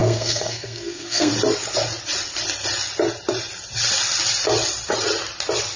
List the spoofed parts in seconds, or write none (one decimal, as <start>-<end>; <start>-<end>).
0.0-1.3